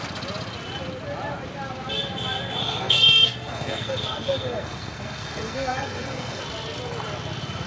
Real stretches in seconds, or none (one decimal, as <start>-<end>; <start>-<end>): 0.0-2.6; 6.4-7.7